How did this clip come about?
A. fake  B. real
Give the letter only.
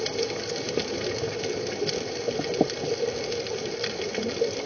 B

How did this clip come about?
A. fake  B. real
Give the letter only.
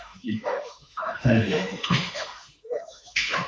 A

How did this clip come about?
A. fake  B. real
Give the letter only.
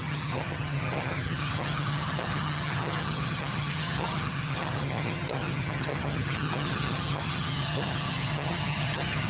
A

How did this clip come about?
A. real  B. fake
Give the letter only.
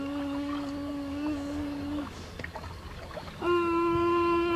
B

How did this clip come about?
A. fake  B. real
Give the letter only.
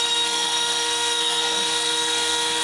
A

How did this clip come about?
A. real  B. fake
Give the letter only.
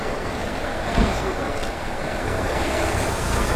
B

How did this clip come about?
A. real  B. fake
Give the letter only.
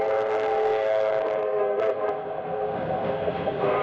B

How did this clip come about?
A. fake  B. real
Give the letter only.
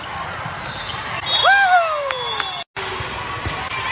B